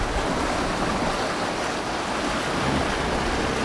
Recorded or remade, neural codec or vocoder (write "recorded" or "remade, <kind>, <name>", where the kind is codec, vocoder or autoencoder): recorded